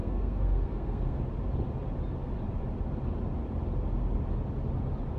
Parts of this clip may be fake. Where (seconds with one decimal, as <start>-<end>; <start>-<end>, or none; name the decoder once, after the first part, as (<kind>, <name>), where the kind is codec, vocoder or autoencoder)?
0.0-1.2 (codec, SNAC)